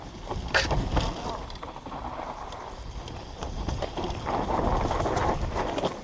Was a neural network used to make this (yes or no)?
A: no